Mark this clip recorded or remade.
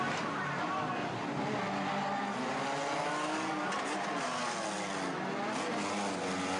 recorded